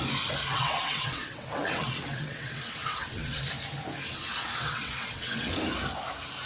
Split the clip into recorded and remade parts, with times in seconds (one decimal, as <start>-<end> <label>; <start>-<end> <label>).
0.0-0.5 recorded; 0.5-3.4 remade; 3.4-4.3 recorded; 4.3-5.5 remade; 5.5-6.5 recorded

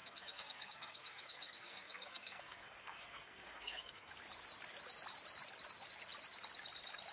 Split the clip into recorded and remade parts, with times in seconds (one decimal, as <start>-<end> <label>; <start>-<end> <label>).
0.0-4.1 remade; 4.1-7.1 recorded

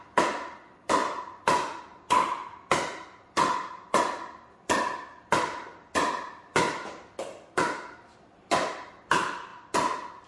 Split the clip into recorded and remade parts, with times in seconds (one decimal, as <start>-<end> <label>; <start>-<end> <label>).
0.0-10.3 recorded

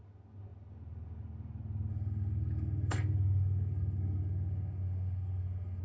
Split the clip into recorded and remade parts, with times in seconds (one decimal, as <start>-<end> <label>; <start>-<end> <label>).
0.0-1.9 recorded; 1.9-5.8 remade

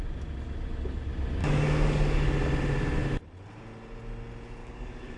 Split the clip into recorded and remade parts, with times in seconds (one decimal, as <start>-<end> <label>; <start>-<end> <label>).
0.0-1.4 recorded; 1.4-2.3 remade; 2.3-4.6 recorded; 4.6-5.2 remade